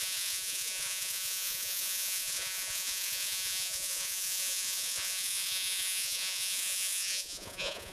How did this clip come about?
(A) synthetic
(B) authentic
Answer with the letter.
A